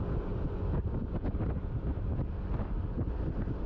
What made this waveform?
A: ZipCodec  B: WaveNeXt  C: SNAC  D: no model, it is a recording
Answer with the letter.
D